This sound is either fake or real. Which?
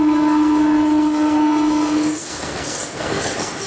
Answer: fake